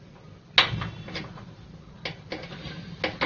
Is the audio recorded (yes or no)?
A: yes